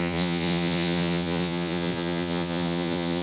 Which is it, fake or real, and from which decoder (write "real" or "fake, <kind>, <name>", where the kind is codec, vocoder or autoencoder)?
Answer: fake, vocoder, Vocos